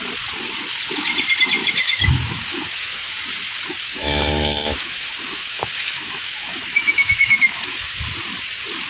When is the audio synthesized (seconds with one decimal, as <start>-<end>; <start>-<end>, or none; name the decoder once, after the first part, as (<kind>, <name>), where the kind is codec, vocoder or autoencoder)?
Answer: 1.6-3.1 (autoencoder, DAC-VAE); 3.8-8.0